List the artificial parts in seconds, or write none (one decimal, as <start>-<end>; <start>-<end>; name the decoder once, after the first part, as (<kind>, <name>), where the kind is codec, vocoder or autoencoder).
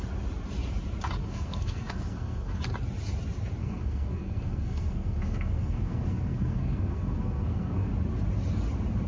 1.2-2.6 (codec, SNAC); 3.6-7.9